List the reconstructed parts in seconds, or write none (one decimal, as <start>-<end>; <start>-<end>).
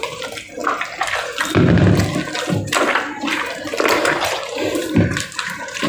0.0-0.6; 2.6-5.9